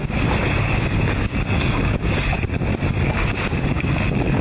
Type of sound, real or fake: fake